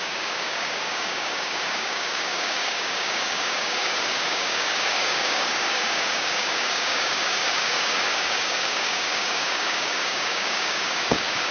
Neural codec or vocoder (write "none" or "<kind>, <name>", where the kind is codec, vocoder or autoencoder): codec, DAC